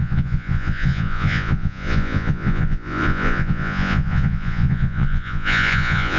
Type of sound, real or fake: fake